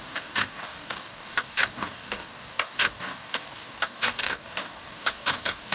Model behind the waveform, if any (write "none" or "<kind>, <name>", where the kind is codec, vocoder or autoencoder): codec, DAC